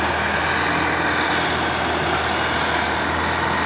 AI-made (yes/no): no